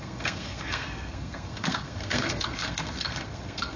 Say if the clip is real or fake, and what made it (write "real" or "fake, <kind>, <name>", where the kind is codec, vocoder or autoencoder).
fake, codec, SNAC